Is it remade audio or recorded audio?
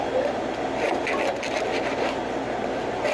recorded